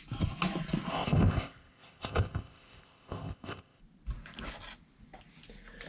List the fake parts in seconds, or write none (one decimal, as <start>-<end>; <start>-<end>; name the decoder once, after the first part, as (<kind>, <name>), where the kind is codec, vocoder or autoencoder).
0.9-3.8 (codec, ZipCodec)